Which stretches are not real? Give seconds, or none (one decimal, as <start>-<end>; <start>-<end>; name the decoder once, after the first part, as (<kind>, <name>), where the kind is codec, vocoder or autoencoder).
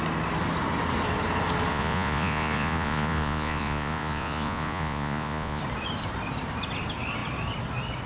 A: 1.7-5.6 (vocoder, Vocos)